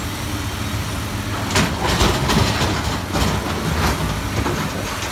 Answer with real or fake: real